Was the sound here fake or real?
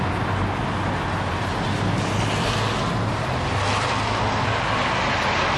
real